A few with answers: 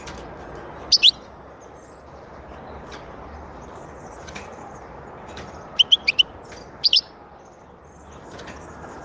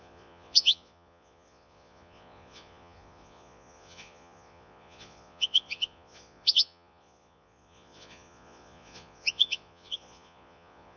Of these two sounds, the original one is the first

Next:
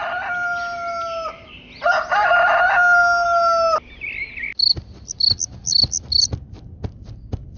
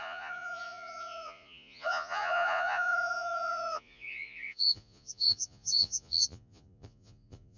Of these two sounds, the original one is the first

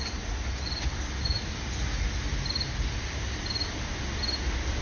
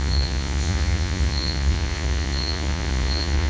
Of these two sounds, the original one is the first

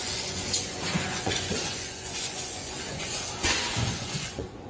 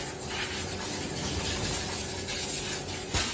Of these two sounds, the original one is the second